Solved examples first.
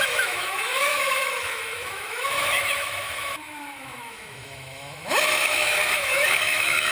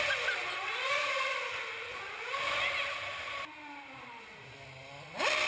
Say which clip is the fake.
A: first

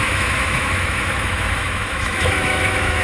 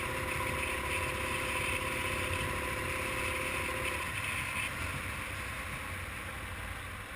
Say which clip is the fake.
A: first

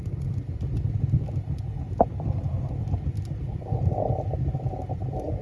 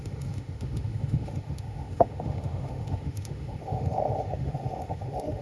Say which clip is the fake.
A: second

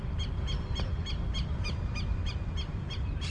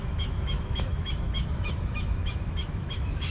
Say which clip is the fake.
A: second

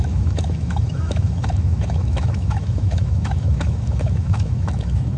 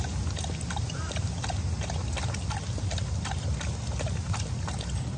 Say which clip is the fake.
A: first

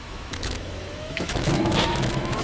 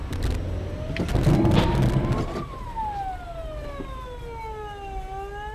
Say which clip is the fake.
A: first